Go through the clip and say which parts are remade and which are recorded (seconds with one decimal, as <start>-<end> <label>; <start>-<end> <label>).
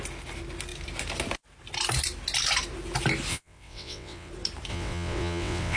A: 0.0-3.3 recorded; 3.3-4.3 remade; 4.3-4.7 recorded; 4.7-5.8 remade